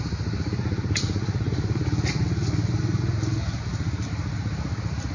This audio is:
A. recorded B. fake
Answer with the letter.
B